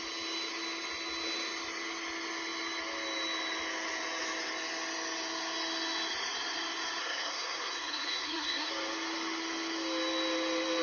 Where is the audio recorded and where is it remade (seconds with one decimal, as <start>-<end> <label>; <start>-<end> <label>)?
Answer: 0.0-7.0 recorded; 7.0-8.7 remade; 8.7-10.8 recorded